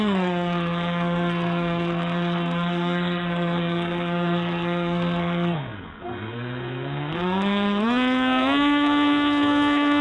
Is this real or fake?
fake